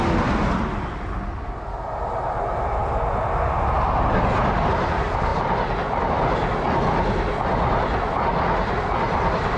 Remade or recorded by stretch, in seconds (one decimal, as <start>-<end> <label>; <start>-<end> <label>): 0.0-9.6 recorded